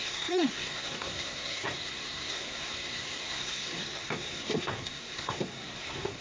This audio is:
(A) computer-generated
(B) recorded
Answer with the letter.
A